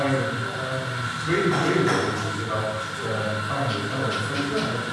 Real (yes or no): yes